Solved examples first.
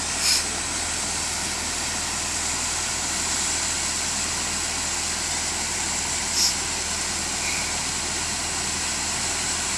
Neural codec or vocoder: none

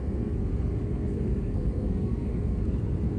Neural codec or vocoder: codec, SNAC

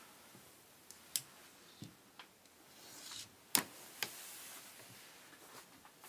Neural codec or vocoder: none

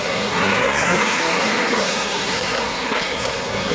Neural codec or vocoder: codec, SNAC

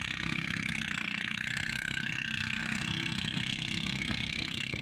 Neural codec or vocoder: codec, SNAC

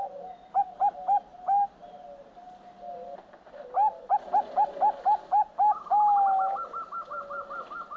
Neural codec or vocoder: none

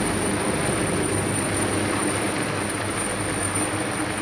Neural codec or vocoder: none